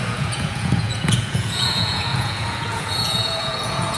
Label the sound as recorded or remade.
remade